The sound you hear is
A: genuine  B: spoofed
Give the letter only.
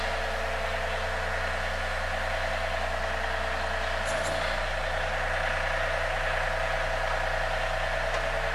A